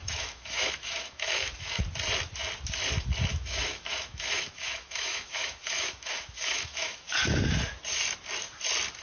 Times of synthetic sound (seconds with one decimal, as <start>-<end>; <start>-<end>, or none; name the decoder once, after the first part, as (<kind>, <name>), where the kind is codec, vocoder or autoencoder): 0.0-1.8 (autoencoder, DAC-VAE); 3.3-7.1